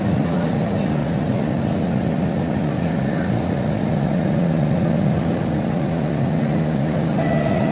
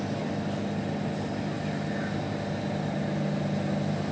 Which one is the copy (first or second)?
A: first